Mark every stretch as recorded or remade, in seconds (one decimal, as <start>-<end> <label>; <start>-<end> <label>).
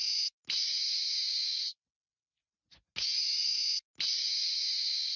0.0-5.2 recorded